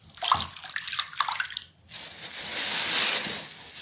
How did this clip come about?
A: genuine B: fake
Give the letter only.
A